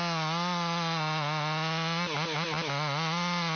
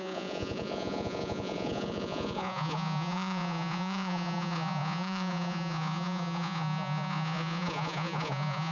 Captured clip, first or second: first